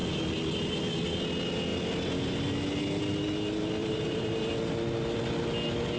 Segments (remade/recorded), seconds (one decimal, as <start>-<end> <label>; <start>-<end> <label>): 0.0-3.8 recorded; 3.8-4.4 remade; 4.4-6.0 recorded